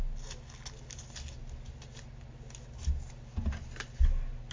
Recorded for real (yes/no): yes